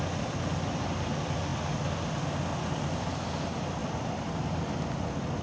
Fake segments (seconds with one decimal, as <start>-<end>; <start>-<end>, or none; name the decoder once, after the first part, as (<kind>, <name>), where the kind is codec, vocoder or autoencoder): none